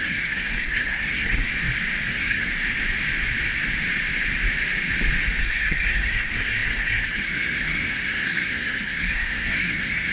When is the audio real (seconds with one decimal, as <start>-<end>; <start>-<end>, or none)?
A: 1.5-2.1; 2.5-5.4